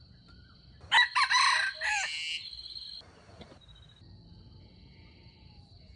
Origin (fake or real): real